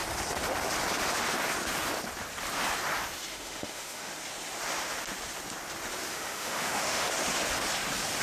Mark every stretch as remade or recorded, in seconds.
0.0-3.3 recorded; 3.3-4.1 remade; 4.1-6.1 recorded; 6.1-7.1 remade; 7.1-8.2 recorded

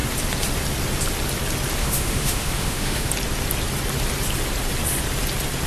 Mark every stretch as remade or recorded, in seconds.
0.0-1.8 recorded; 1.8-3.1 remade; 3.1-5.7 recorded

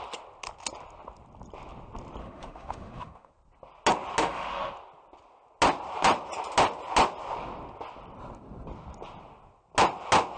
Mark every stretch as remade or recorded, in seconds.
0.0-2.2 recorded; 2.2-3.3 remade; 3.3-4.2 recorded; 4.2-4.7 remade; 4.7-10.4 recorded

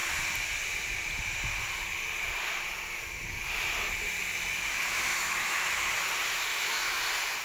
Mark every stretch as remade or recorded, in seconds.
0.0-5.1 recorded; 5.1-5.9 remade; 5.9-6.5 recorded; 6.5-7.0 remade; 7.0-7.4 recorded

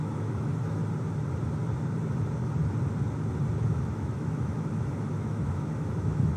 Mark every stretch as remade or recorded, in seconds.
0.0-0.8 remade; 0.8-3.6 recorded; 3.6-6.4 remade